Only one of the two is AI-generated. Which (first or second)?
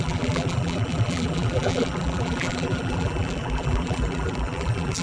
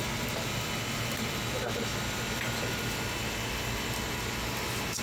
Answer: first